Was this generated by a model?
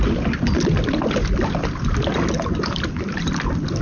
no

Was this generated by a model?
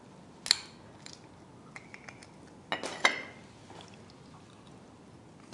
no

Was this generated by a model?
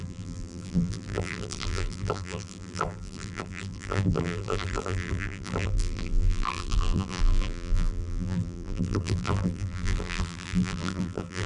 yes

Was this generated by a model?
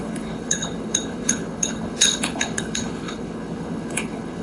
yes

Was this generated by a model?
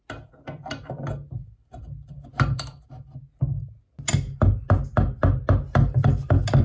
no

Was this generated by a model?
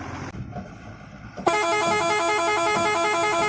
no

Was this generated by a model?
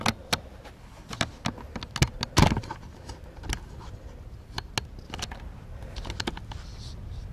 no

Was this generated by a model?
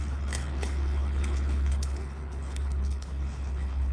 yes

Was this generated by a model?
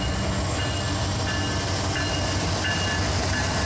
no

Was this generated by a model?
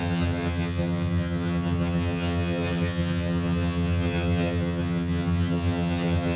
yes